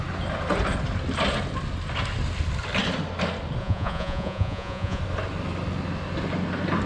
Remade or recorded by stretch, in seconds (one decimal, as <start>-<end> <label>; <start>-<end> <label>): 0.0-3.6 recorded; 3.6-5.0 remade; 5.0-6.9 recorded